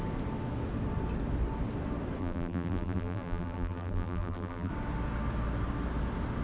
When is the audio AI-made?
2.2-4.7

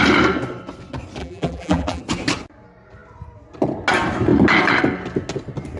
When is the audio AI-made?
1.2-2.0

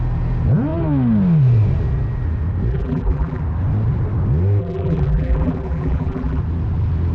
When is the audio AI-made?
2.7-3.4; 4.6-6.4

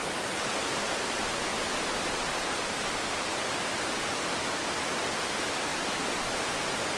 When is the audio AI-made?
5.7-6.5

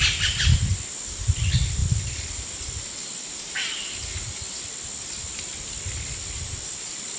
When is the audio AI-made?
none

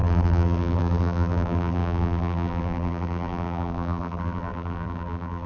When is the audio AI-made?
0.0-5.5

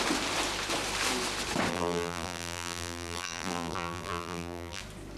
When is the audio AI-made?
1.7-4.8

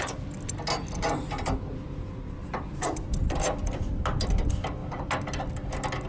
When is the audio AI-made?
2.4-3.9